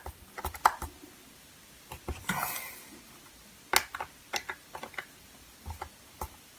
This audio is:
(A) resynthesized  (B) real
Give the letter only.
B